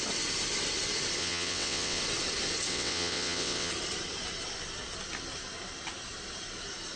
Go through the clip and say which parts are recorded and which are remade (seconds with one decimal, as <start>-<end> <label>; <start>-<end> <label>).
0.0-1.2 recorded; 1.2-2.0 remade; 2.0-2.7 recorded; 2.7-3.7 remade; 3.7-7.0 recorded